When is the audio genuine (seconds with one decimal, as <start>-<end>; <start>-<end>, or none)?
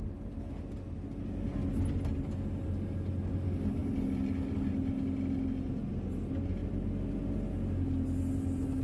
0.0-8.8